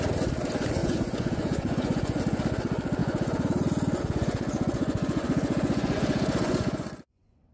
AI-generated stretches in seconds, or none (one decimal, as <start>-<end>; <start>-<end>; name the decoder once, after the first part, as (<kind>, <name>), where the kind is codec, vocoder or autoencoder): 0.8-2.2 (vocoder, Vocos); 3.0-7.5